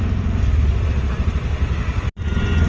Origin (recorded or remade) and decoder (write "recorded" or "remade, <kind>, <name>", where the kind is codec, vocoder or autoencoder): recorded